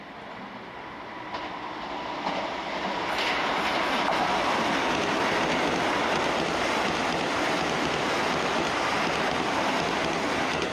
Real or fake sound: real